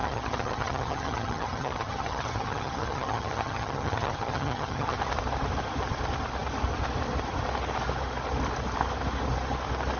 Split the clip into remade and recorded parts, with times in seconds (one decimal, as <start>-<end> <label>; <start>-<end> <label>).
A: 0.0-5.0 remade; 5.0-10.0 recorded